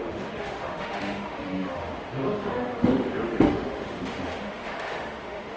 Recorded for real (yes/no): no